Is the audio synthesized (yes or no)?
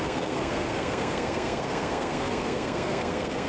yes